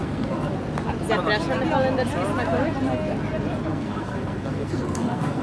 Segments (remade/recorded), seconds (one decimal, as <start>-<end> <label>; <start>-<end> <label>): 0.0-0.5 remade; 0.5-3.7 recorded; 3.7-5.4 remade